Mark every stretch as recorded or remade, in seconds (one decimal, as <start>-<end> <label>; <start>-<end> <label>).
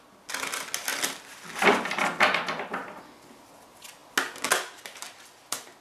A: 0.0-5.8 recorded